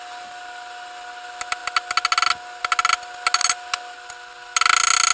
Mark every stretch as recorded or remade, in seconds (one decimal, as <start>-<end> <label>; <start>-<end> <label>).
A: 0.0-5.1 recorded